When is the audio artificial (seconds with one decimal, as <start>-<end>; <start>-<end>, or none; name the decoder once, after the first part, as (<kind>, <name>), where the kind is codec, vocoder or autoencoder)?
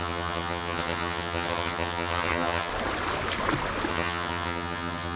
0.0-2.7 (vocoder, HiFi-GAN); 3.9-5.2